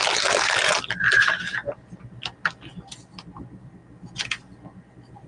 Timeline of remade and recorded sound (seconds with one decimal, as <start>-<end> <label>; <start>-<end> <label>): 0.0-0.7 recorded; 0.7-1.5 remade; 1.5-5.3 recorded